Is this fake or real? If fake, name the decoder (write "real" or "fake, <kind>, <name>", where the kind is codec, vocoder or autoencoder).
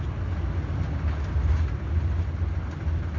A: real